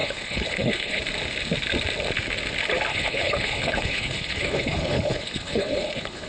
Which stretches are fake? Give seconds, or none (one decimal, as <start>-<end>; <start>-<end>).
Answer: 0.0-1.0; 2.9-6.3